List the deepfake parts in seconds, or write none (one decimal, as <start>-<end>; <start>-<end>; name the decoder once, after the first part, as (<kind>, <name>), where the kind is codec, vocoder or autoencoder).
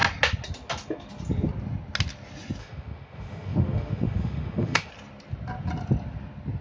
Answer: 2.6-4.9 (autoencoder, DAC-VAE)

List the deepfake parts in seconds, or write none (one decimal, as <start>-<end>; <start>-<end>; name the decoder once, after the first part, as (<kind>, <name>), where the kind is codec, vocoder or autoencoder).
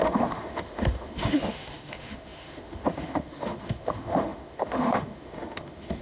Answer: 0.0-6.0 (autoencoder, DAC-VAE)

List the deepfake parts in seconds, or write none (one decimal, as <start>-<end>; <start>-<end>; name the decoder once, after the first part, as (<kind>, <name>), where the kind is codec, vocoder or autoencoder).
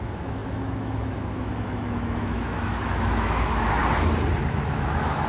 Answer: 0.0-3.8 (autoencoder, DAC-VAE); 4.5-5.3